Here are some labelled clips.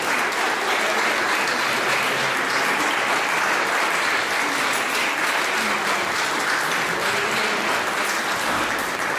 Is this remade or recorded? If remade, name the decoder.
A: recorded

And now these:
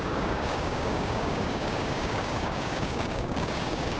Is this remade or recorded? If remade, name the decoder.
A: remade, codec, DAC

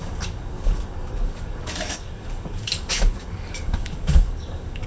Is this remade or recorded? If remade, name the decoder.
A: remade, codec, DAC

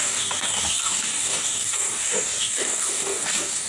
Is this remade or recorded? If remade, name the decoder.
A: remade, codec, DAC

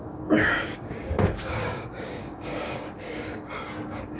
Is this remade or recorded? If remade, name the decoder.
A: remade, codec, DAC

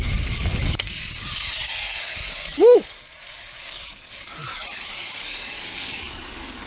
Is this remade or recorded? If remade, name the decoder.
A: remade, codec, DAC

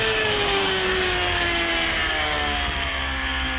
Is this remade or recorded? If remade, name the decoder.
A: remade, codec, DAC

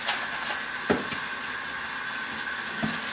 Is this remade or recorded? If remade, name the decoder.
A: recorded